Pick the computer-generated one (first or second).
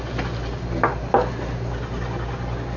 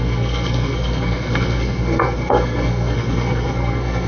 second